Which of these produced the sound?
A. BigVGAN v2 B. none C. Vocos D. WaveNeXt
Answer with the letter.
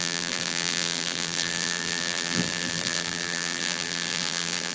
A